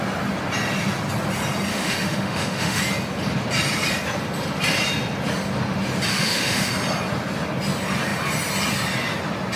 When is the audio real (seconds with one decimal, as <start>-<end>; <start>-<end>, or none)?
0.0-1.7; 2.8-6.1; 6.7-9.6